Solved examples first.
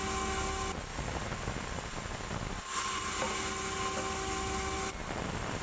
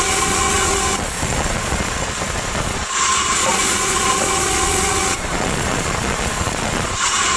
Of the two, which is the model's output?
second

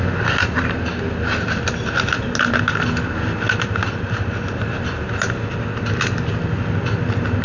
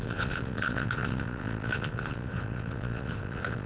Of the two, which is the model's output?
second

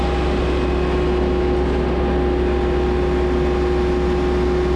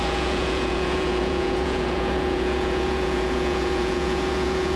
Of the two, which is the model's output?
second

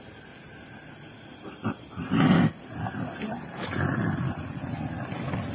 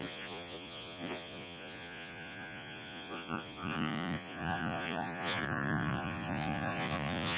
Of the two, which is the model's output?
second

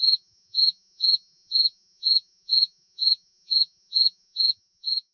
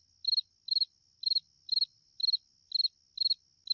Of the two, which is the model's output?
first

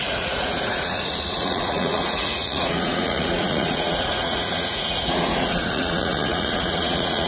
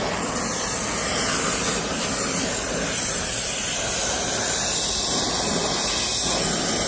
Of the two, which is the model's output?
first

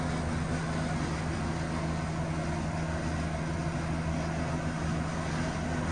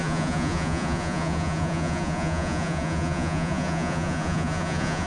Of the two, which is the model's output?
second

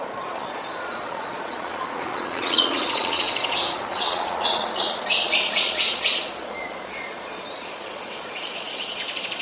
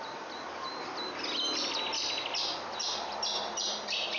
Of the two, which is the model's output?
first